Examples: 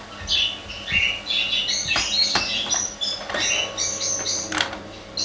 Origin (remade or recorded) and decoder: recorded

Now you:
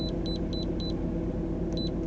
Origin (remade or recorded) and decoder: recorded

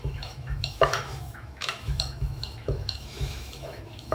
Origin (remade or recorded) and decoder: remade, autoencoder, DAC-VAE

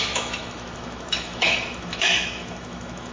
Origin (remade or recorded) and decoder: remade, autoencoder, DAC-VAE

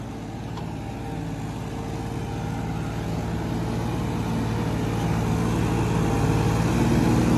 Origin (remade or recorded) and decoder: recorded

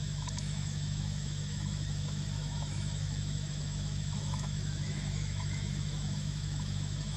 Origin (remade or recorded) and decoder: remade, autoencoder, DAC-VAE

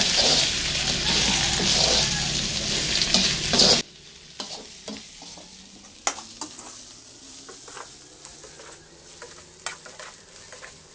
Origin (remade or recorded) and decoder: recorded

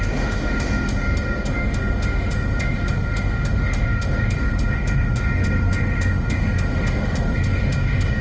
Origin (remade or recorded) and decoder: remade, autoencoder, DAC-VAE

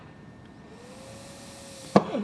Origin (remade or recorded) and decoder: recorded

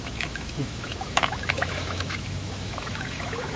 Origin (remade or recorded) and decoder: remade, autoencoder, DAC-VAE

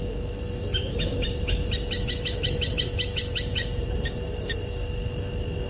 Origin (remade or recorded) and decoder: remade, autoencoder, DAC-VAE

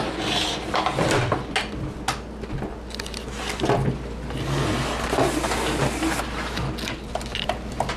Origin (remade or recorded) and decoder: recorded